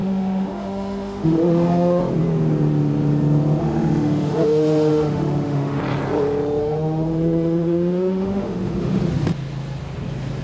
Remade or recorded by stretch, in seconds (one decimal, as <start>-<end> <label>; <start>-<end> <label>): 0.0-2.0 remade; 2.0-3.6 recorded; 3.6-5.8 remade; 5.8-6.6 recorded; 6.6-9.0 remade; 9.0-10.4 recorded